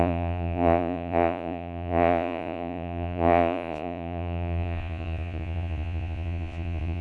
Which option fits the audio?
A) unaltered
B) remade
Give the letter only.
B